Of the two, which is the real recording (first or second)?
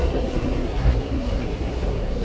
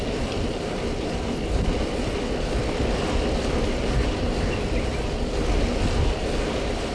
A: second